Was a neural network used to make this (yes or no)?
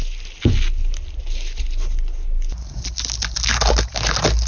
no